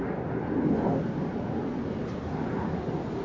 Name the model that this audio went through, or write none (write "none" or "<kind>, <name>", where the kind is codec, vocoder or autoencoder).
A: none